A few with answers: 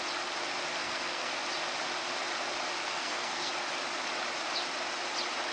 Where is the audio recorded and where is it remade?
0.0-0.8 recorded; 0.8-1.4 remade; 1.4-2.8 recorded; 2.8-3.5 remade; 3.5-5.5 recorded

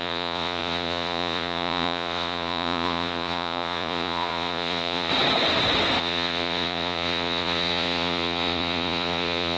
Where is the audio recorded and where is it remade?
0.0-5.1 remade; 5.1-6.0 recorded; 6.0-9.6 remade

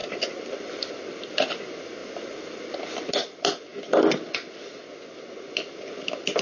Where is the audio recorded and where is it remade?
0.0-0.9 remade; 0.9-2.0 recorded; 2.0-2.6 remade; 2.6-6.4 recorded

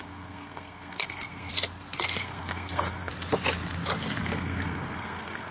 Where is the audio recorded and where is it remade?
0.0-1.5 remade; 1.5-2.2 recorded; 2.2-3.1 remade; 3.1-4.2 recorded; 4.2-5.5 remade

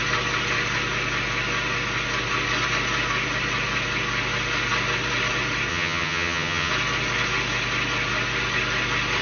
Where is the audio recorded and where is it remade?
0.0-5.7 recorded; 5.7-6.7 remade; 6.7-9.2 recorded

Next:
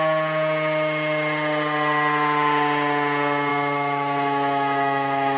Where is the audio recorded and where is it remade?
0.0-3.5 recorded; 3.5-5.4 remade

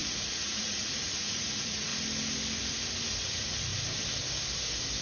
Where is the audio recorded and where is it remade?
0.0-1.9 remade; 1.9-3.1 recorded; 3.1-3.7 remade; 3.7-5.0 recorded